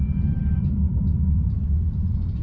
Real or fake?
fake